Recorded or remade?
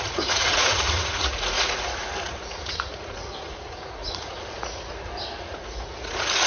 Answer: remade